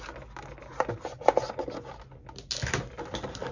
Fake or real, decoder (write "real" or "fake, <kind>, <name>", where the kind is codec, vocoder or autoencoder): real